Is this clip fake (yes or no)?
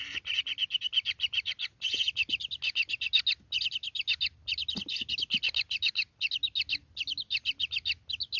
no